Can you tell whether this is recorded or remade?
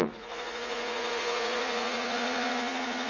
remade